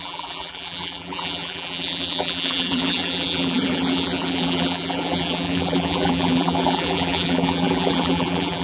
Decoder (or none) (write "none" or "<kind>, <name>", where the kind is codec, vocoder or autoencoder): vocoder, BigVGAN v2